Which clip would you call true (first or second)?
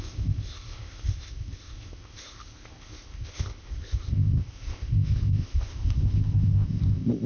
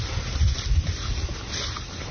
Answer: second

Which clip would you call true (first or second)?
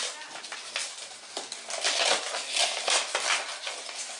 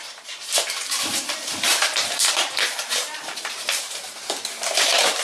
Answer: first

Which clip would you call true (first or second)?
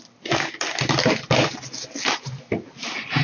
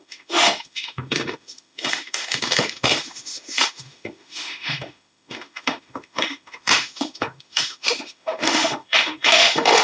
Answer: first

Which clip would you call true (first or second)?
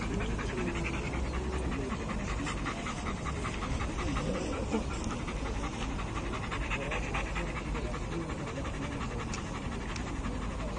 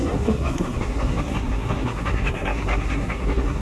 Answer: first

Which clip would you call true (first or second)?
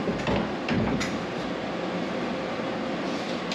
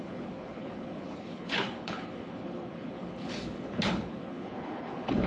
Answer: first